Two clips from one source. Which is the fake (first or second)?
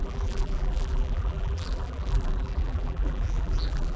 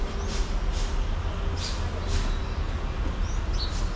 first